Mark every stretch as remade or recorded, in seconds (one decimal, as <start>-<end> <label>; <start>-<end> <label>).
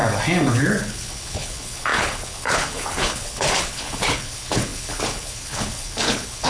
0.0-0.5 recorded; 0.5-6.5 remade